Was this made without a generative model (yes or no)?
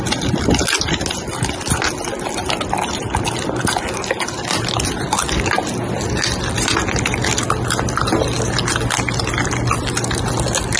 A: yes